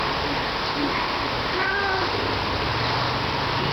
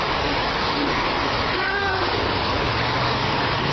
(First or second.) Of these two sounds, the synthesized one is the second